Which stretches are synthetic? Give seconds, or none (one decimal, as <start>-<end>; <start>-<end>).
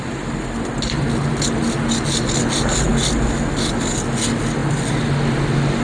none